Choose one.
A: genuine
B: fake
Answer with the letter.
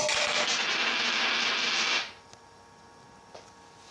A